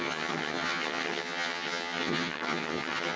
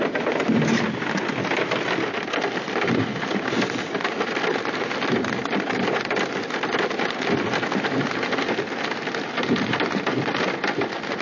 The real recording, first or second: second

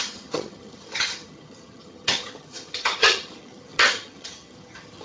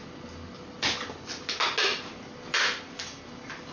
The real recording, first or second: second